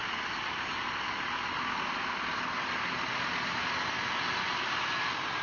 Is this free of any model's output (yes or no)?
yes